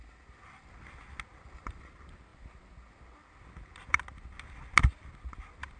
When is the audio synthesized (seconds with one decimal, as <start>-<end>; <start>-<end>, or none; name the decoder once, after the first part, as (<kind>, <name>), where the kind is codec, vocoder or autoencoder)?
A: none